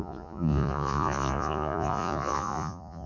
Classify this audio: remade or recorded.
remade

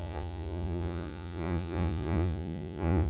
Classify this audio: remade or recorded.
remade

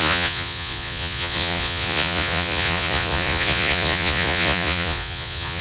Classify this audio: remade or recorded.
remade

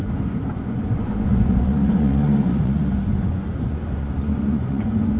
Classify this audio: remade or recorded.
remade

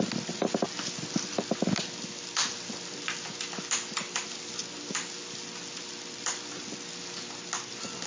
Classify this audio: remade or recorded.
recorded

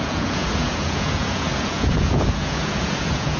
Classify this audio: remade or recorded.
remade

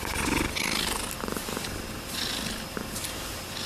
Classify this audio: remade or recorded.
recorded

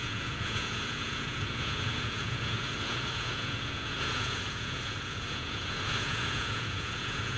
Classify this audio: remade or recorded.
remade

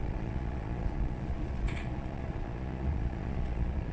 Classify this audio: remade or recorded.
remade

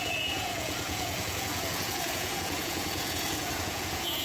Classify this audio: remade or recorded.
remade